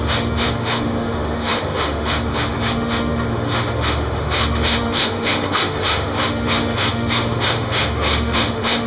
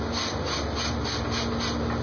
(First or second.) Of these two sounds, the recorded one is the second